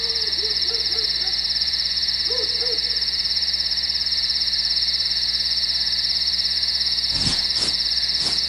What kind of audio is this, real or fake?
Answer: fake